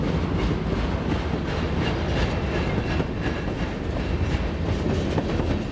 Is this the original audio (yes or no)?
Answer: yes